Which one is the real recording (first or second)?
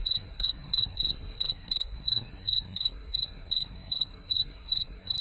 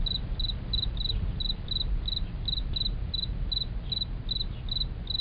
second